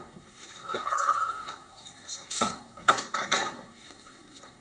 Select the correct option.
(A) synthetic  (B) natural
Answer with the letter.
A